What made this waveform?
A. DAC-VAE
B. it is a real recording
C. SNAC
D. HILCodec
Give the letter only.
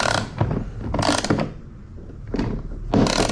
B